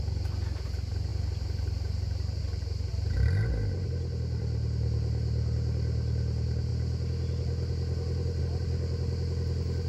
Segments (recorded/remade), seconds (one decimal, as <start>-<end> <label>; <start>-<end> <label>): 0.0-9.9 recorded